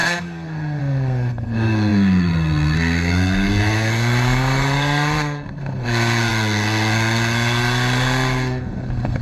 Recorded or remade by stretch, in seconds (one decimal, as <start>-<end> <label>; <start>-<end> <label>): 0.0-9.2 remade